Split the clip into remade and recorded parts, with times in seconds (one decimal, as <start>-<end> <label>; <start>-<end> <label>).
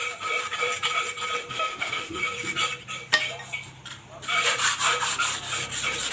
0.0-1.5 recorded; 1.5-2.2 remade; 2.2-6.1 recorded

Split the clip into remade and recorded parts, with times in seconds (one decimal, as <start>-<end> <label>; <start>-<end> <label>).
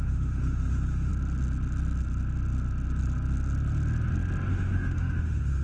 0.0-1.1 remade; 1.1-4.5 recorded; 4.5-5.6 remade